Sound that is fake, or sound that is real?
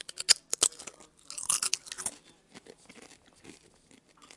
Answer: real